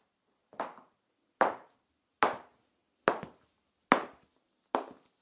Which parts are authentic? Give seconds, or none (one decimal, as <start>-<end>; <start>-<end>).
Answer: 0.0-5.2